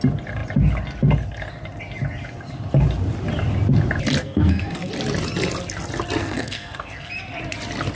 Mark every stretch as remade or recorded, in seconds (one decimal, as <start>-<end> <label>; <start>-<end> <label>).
0.0-4.2 recorded; 4.2-4.9 remade; 4.9-6.2 recorded; 6.2-7.1 remade; 7.1-8.0 recorded